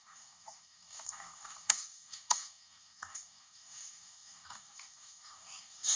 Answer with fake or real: fake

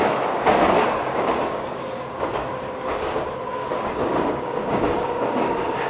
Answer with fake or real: fake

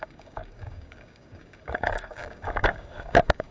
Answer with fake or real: fake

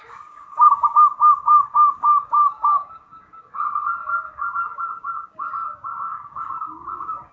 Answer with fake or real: fake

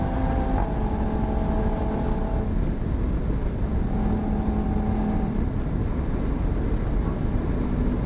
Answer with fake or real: real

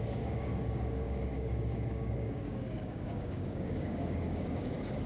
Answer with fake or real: fake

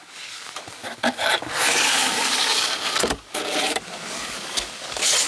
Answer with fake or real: fake